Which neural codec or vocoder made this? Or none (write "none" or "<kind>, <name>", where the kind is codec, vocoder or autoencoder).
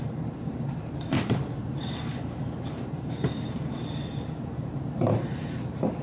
vocoder, BigVGAN v2